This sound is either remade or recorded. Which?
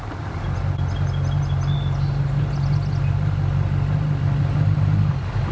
recorded